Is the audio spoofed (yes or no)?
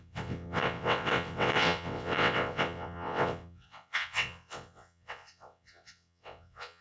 yes